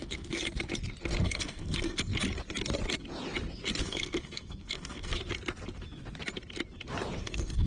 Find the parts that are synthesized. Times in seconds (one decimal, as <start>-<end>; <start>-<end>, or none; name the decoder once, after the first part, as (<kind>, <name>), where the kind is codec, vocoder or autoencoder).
0.0-0.4 (codec, SNAC); 1.2-2.1; 3.8-5.1; 7.2-7.7